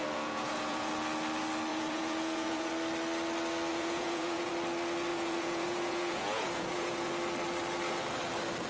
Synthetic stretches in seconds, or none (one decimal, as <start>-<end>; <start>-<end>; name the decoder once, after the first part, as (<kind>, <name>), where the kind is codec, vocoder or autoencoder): 0.0-0.9 (vocoder, Vocos); 1.7-2.7; 3.7-4.5; 5.1-7.1

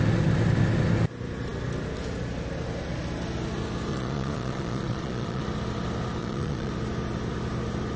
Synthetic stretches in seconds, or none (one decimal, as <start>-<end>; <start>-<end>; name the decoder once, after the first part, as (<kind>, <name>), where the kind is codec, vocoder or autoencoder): 3.9-5.4 (vocoder, Vocos); 6.2-6.7

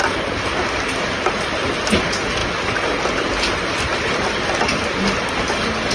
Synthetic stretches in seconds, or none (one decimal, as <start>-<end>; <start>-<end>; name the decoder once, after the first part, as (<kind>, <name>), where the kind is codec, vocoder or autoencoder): none

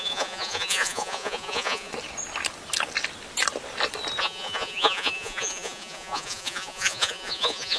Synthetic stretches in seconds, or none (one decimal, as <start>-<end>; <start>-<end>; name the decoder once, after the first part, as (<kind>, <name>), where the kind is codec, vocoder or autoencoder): 0.0-1.9 (vocoder, Vocos); 4.2-7.8

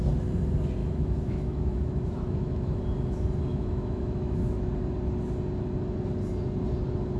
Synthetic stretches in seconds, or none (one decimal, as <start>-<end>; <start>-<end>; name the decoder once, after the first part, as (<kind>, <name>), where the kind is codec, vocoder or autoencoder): 0.8-2.8 (autoencoder, DAC-VAE); 3.5-4.7

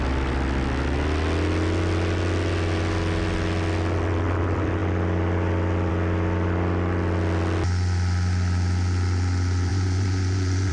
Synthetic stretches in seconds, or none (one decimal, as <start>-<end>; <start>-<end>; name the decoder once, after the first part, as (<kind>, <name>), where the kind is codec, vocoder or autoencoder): 9.7-10.7 (vocoder, Vocos)

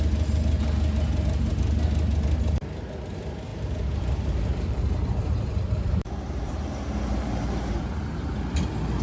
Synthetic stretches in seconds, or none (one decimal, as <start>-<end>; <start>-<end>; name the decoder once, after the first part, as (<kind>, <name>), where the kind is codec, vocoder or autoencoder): 3.5-7.5 (vocoder, BigVGAN v2)

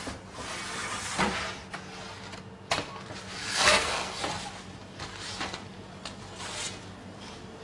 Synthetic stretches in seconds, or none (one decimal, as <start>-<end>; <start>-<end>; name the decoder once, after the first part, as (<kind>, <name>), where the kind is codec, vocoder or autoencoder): 3.4-4.2 (codec, SNAC)